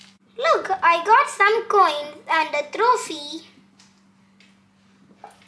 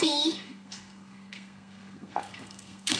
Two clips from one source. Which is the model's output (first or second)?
second